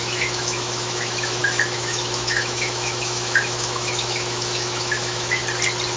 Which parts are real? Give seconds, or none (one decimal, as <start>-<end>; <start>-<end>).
5.4-6.0